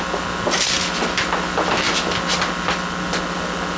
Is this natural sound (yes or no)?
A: yes